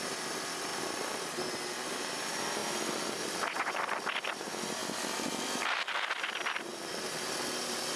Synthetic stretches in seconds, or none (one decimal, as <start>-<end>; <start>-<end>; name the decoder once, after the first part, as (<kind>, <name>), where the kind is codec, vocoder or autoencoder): 0.0-0.7 (vocoder, BigVGAN v2); 1.9-2.6; 3.7-4.8; 6.2-8.0